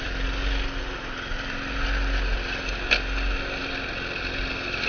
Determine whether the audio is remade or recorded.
recorded